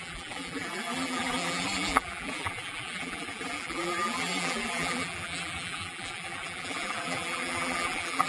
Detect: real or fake fake